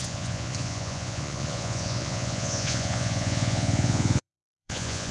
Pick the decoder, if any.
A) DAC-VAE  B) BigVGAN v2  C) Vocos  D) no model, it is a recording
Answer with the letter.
C